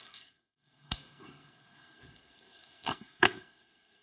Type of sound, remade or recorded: remade